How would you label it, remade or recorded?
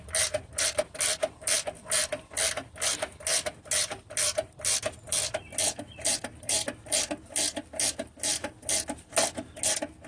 recorded